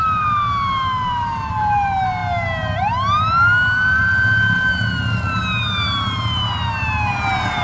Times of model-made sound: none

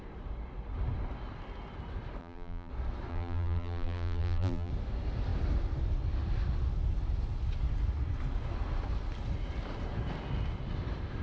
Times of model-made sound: 2.2-2.7; 3.1-4.7

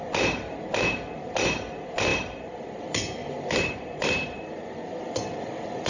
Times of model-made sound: 2.1-2.8; 3.2-5.9